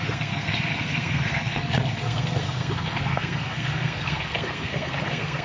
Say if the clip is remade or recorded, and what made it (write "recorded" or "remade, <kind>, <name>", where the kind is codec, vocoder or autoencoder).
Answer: remade, codec, SNAC